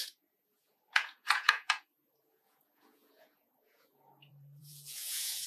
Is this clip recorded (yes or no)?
no